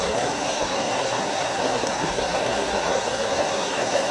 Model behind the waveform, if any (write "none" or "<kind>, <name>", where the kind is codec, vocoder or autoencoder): codec, SNAC